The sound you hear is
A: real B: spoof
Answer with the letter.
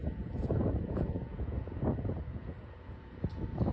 B